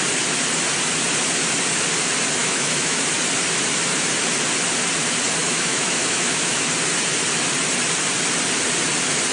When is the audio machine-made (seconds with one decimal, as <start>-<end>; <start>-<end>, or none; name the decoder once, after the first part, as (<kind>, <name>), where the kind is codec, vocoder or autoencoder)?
2.4-3.0 (autoencoder, DAC-VAE); 5.4-6.7

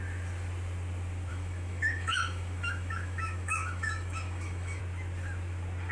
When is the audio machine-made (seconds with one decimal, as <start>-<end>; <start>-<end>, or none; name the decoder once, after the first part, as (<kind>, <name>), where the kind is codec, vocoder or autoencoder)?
1.3-4.8 (autoencoder, DAC-VAE)